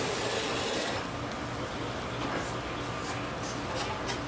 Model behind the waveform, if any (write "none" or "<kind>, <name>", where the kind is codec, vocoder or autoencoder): none